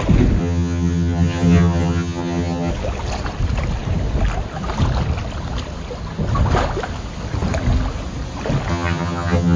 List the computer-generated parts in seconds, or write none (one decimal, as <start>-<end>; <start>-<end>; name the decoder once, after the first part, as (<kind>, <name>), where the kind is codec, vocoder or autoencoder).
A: 0.4-2.7 (vocoder, HiFi-GAN); 8.7-9.6